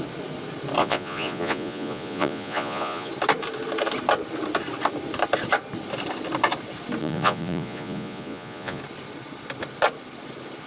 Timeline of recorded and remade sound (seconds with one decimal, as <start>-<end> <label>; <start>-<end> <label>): 0.0-0.8 recorded; 0.8-3.1 remade; 3.1-7.0 recorded; 7.0-8.8 remade; 8.8-10.7 recorded